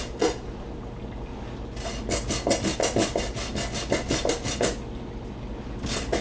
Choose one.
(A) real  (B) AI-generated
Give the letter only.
A